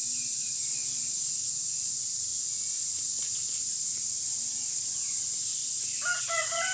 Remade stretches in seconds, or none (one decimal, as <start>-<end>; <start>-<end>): 0.6-1.3